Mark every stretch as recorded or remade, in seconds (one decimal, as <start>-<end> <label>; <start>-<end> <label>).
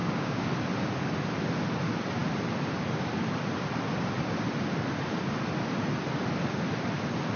0.0-0.5 remade; 0.5-7.4 recorded